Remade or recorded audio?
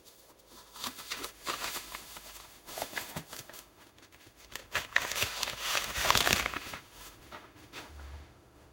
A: remade